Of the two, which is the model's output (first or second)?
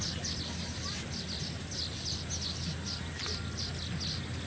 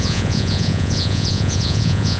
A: second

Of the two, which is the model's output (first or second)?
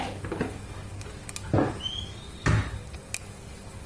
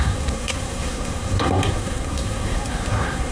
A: second